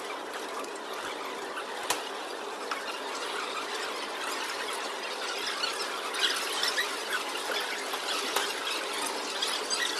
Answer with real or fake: real